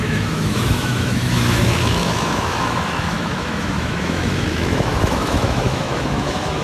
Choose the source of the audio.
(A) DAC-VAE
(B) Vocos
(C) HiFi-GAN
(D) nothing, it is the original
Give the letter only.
A